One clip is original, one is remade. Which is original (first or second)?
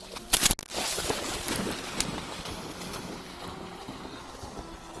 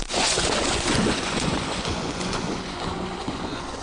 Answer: first